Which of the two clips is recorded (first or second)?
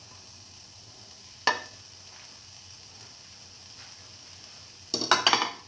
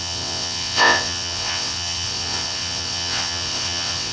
first